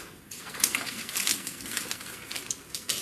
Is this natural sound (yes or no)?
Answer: no